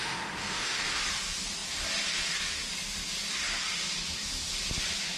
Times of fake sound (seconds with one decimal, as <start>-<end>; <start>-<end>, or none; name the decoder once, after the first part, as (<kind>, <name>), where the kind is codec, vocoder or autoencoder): 0.0-1.0 (autoencoder, DAC-VAE)